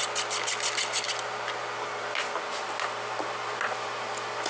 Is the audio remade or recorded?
recorded